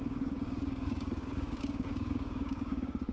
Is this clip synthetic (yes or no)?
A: yes